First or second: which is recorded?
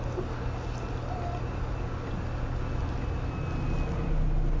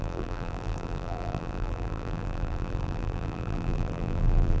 first